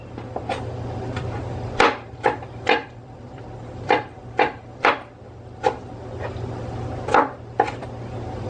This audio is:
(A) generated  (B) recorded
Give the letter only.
A